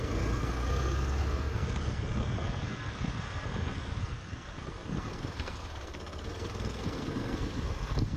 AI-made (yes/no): yes